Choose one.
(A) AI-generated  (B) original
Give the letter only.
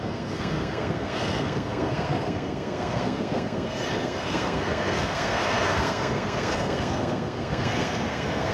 A